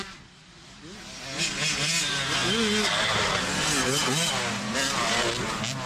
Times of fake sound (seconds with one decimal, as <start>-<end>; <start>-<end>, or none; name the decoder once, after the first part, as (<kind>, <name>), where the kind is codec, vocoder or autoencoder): none